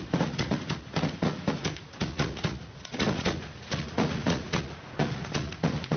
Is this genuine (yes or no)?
no